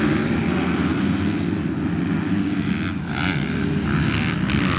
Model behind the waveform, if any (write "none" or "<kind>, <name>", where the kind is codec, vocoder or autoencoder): none